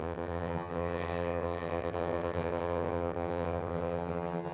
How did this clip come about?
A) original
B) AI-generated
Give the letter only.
B